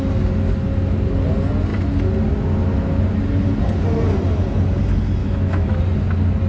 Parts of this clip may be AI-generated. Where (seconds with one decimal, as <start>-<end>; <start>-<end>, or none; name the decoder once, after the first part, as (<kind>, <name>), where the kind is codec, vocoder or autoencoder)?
5.2-5.8 (autoencoder, DAC-VAE)